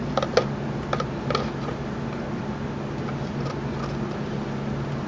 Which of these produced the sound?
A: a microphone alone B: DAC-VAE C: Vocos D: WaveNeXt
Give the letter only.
A